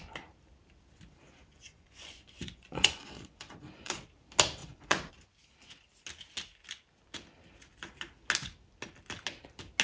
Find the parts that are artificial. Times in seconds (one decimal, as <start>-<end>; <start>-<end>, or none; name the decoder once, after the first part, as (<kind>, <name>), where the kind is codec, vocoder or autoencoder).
1.5-4.0 (vocoder, Vocos); 4.6-5.1